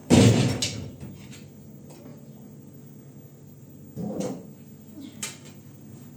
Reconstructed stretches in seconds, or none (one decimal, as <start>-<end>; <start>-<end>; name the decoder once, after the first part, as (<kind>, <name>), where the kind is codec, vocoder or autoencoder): 2.1-3.0 (vocoder, Vocos)